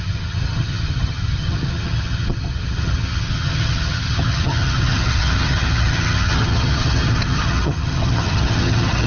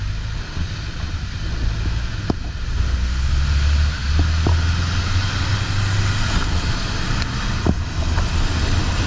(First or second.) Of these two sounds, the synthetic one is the first